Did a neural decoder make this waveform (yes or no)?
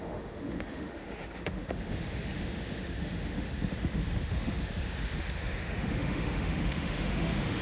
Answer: yes